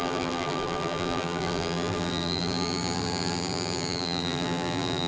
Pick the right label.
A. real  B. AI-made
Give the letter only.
B